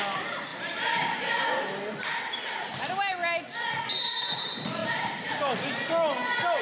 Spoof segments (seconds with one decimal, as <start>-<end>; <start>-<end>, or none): 0.5-1.5; 4.8-5.3